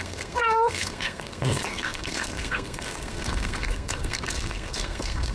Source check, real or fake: fake